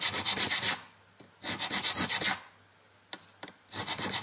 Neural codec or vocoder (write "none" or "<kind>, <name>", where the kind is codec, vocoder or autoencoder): none